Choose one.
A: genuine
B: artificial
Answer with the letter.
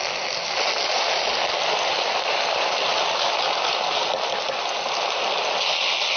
A